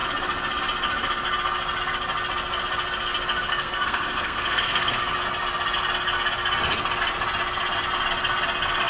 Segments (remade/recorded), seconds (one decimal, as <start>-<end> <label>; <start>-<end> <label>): 0.0-3.5 recorded; 3.5-5.0 remade; 5.0-8.9 recorded